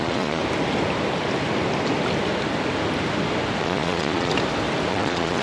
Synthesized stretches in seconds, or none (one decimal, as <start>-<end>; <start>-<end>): 0.0-0.4; 3.6-4.3; 4.9-5.4